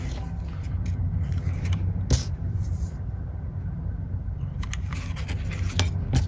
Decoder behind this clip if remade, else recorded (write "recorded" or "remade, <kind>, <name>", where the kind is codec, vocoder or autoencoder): recorded